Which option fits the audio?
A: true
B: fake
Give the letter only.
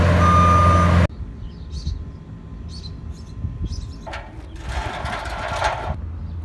A